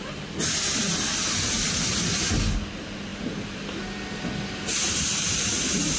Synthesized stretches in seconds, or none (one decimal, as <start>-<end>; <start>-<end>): none